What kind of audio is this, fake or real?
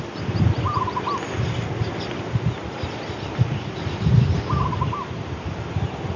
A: real